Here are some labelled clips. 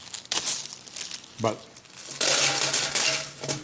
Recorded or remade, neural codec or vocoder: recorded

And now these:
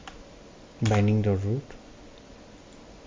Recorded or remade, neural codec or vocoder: recorded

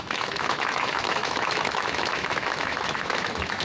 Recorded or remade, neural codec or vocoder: remade, autoencoder, DAC-VAE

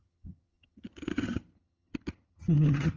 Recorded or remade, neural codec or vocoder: remade, vocoder, HiFi-GAN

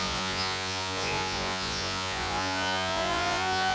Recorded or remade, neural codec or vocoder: remade, vocoder, Vocos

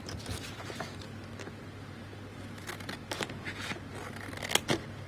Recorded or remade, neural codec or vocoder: recorded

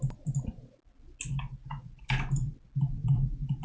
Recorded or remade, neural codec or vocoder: recorded